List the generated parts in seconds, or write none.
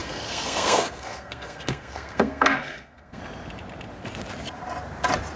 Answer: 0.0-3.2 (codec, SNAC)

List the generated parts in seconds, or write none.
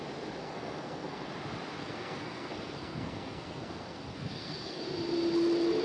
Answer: 0.4-1.3 (codec, SNAC); 1.8-4.8